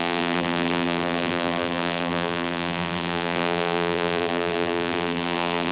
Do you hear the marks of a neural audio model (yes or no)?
yes